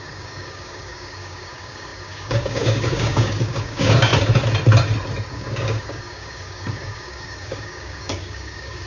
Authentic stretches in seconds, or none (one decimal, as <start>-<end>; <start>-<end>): 4.1-5.3